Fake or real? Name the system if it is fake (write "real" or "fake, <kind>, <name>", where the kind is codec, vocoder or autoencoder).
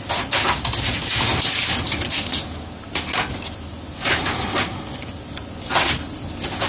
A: real